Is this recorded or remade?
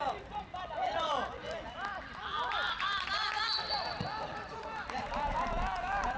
recorded